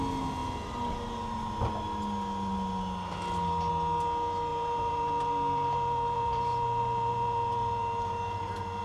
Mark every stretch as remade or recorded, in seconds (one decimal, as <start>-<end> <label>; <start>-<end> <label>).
0.0-4.5 recorded; 4.5-8.8 remade